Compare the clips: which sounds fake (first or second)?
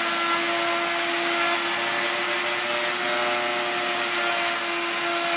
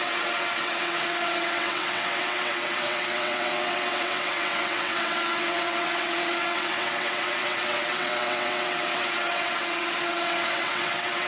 second